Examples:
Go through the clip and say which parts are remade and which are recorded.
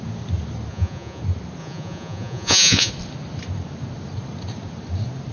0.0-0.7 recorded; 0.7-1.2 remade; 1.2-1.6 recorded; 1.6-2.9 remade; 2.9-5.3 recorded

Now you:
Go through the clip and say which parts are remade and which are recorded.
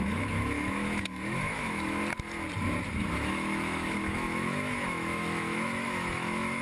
0.0-2.0 remade; 2.0-3.1 recorded; 3.1-6.6 remade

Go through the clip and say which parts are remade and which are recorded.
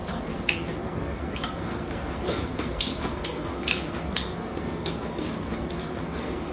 0.0-6.5 remade